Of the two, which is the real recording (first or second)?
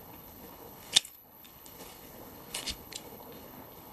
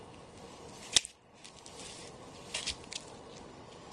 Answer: second